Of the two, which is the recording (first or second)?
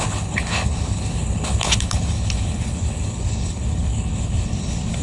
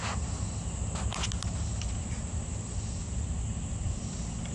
second